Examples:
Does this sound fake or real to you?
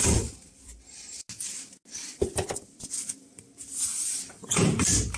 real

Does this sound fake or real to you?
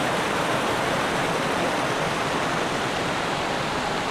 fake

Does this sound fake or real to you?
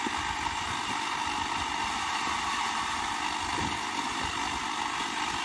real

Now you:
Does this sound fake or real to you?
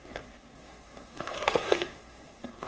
fake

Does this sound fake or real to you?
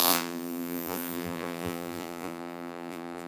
fake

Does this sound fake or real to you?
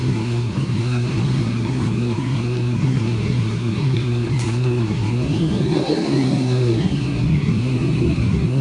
fake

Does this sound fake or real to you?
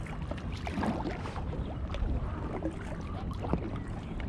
fake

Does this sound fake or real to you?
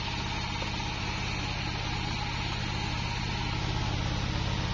real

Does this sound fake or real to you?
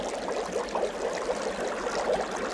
real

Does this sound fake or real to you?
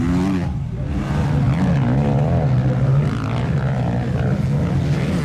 real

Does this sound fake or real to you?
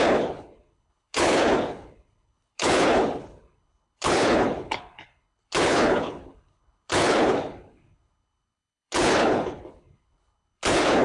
fake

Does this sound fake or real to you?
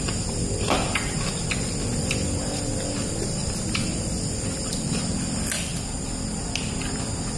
real